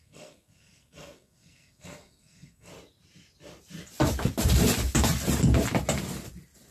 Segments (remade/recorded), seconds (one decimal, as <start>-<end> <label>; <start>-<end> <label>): 0.0-2.7 remade; 2.7-6.7 recorded